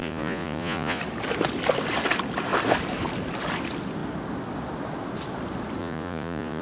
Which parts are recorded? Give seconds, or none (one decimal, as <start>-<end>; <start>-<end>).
1.0-5.8